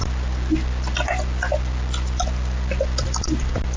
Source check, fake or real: real